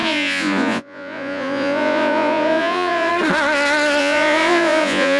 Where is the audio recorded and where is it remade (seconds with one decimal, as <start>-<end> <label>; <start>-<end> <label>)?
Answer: 0.0-3.1 remade; 3.1-4.0 recorded; 4.0-5.2 remade